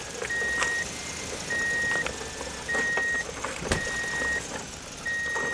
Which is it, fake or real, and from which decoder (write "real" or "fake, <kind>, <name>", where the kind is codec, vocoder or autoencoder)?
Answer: real